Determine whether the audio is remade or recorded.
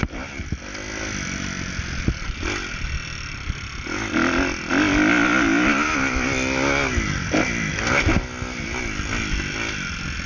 recorded